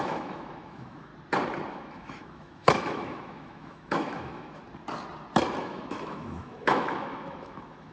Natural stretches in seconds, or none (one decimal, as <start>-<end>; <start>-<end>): 1.1-1.7; 4.6-5.6